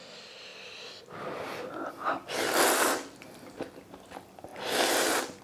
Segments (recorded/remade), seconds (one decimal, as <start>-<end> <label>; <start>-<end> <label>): 0.0-5.4 recorded